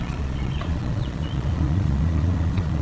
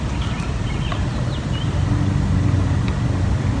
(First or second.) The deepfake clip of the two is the first